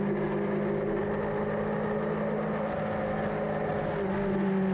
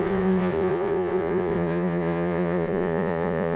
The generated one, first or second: second